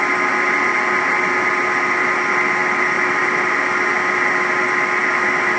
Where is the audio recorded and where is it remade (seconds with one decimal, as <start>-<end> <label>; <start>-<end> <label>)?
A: 0.0-5.6 recorded